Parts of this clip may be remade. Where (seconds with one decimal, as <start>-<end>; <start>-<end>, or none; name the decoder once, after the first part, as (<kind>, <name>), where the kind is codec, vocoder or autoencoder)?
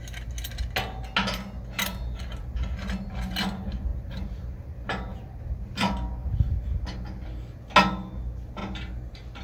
3.9-5.4 (vocoder, BigVGAN v2); 6.2-6.8